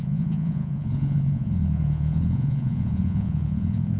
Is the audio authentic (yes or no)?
no